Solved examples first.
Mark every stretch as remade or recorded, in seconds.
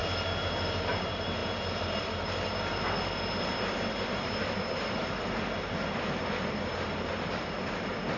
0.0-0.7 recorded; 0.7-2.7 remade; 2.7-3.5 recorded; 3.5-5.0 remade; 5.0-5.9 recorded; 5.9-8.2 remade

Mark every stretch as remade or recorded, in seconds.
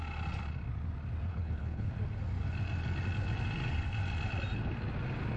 0.0-1.3 recorded; 1.3-1.9 remade; 1.9-5.4 recorded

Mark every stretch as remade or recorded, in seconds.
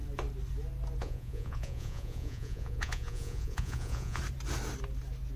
0.0-1.0 recorded; 1.0-4.2 remade; 4.2-5.4 recorded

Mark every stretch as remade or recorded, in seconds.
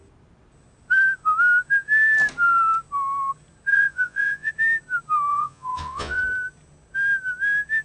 0.0-3.7 recorded; 3.7-4.5 remade; 4.5-5.3 recorded; 5.3-6.2 remade; 6.2-7.8 recorded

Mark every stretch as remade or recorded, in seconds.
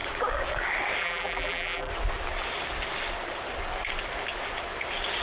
0.0-1.0 recorded; 1.0-1.9 remade; 1.9-5.2 recorded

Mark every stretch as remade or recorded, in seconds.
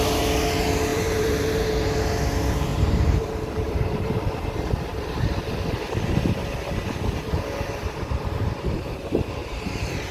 0.0-0.9 recorded; 0.9-1.7 remade; 1.7-2.7 recorded; 2.7-4.4 remade; 4.4-9.4 recorded; 9.4-10.1 remade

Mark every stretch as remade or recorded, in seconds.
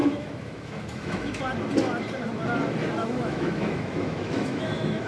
0.0-1.4 remade; 1.4-3.0 recorded; 3.0-5.1 remade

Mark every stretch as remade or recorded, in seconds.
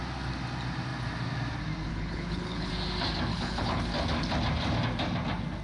0.0-1.9 recorded; 1.9-2.7 remade; 2.7-3.3 recorded; 3.3-3.8 remade; 3.8-5.6 recorded